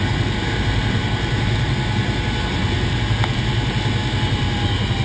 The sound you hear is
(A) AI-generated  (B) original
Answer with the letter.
B